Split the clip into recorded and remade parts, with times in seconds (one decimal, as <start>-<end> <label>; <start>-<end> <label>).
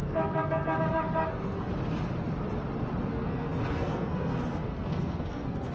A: 0.0-1.7 remade; 1.7-3.1 recorded; 3.1-5.7 remade